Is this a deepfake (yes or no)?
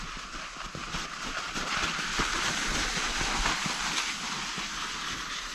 no